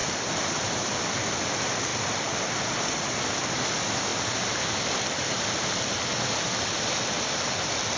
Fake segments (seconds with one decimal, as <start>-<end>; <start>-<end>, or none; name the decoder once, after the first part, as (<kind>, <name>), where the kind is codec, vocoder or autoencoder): 0.0-1.4 (vocoder, BigVGAN v2); 1.9-3.6; 4.1-5.3